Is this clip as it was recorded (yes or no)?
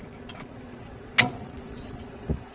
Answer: no